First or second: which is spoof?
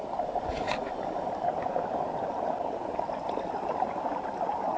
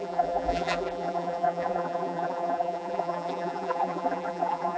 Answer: second